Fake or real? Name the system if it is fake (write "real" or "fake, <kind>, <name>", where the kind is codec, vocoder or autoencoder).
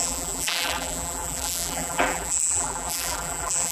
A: fake, vocoder, BigVGAN v2